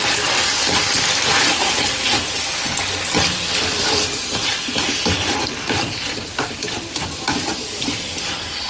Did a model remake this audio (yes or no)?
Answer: no